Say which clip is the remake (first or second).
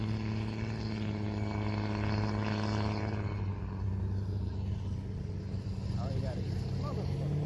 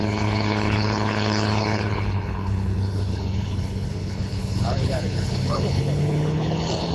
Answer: second